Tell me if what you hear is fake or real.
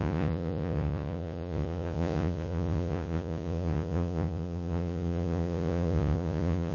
fake